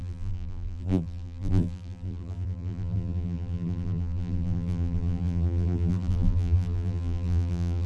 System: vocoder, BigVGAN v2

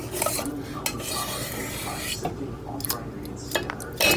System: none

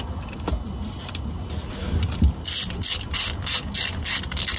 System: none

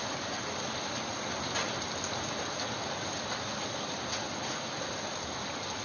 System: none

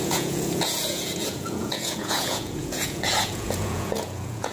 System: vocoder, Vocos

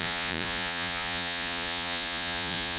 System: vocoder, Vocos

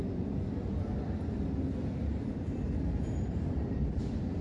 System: vocoder, BigVGAN v2